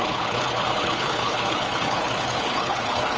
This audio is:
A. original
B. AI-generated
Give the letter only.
B